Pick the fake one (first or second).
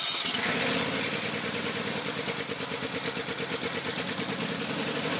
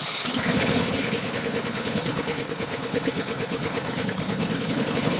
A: second